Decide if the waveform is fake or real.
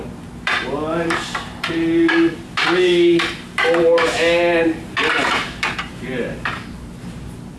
fake